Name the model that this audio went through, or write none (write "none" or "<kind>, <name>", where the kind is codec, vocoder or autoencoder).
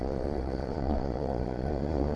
vocoder, Vocos